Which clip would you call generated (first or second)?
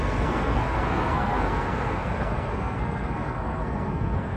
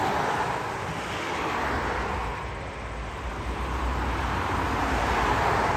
first